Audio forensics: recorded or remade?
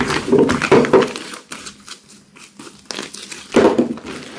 recorded